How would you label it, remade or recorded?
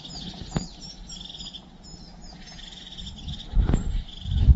recorded